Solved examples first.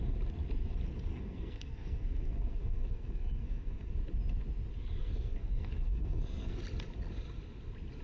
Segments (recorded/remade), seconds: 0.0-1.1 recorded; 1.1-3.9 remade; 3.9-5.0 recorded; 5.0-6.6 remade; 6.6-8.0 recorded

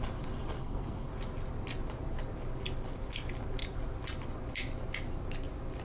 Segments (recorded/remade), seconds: 0.0-0.6 recorded; 0.6-1.1 remade; 1.1-5.8 recorded

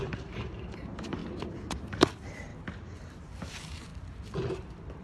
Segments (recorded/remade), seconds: 0.0-1.2 remade; 1.2-1.9 recorded; 1.9-2.5 remade; 2.5-3.0 recorded; 3.0-3.9 remade; 3.9-5.0 recorded

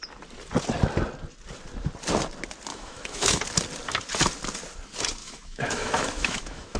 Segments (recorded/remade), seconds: 0.0-2.7 recorded; 2.7-3.4 remade; 3.4-5.2 recorded; 5.2-6.8 remade

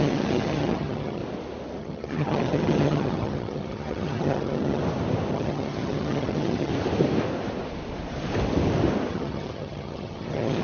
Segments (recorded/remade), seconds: 0.0-1.2 remade; 1.2-1.8 recorded; 1.8-4.8 remade; 4.8-5.3 recorded; 5.3-6.7 remade; 6.7-9.1 recorded; 9.1-10.6 remade